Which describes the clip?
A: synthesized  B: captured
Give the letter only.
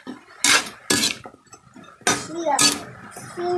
B